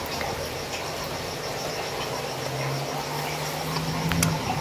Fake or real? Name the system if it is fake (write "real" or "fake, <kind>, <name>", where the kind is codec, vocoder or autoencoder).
real